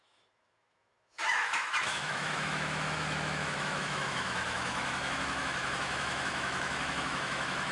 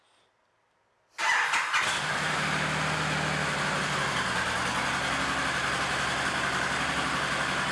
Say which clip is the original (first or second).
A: second